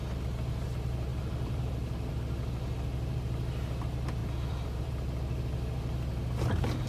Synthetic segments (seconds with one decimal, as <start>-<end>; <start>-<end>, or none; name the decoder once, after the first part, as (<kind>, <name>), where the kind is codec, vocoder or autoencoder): 1.1-2.1 (vocoder, BigVGAN v2); 4.2-4.9